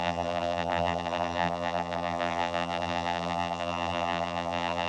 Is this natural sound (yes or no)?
no